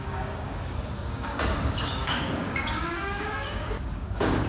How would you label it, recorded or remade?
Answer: remade